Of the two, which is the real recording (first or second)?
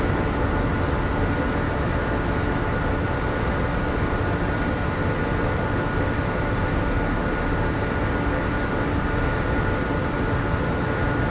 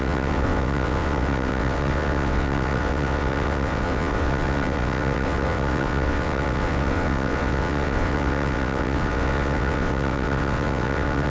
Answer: first